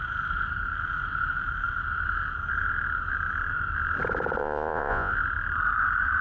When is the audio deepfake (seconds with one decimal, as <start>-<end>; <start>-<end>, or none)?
4.4-5.1